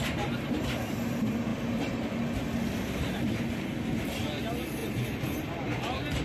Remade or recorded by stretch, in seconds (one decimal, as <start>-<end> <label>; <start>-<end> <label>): 0.0-6.2 recorded